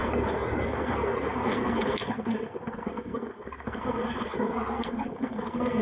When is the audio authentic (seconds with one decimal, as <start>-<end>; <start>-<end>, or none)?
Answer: none

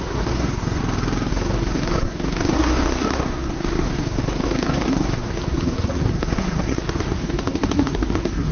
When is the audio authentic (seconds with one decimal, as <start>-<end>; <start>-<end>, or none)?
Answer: 0.8-1.3

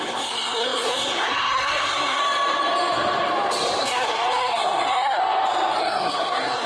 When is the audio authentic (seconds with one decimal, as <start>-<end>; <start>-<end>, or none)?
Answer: 2.2-3.8; 5.2-5.8